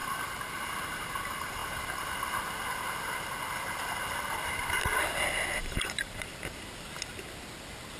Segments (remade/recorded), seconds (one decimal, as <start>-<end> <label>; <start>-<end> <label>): 0.0-0.5 recorded; 0.5-1.6 remade; 1.6-5.6 recorded; 5.6-6.3 remade; 6.3-8.0 recorded